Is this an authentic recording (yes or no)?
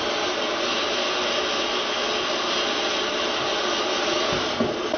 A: yes